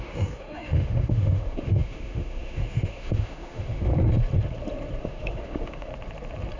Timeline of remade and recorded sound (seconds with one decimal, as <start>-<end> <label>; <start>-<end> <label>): 0.0-3.9 remade; 3.9-5.0 recorded; 5.0-5.9 remade; 5.9-6.6 recorded